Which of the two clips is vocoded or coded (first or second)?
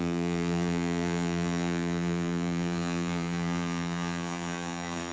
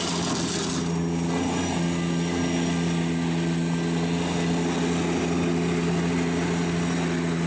first